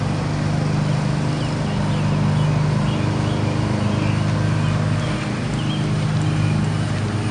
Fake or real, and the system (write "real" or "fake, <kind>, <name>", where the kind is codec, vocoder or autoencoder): real